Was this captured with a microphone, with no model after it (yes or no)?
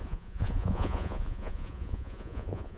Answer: no